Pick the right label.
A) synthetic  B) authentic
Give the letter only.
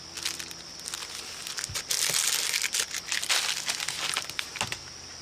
B